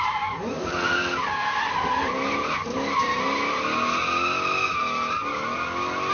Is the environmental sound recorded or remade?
recorded